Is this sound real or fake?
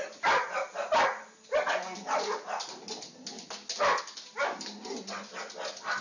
real